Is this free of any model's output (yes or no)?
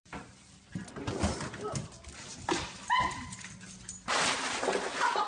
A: no